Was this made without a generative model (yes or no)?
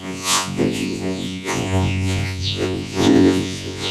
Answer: no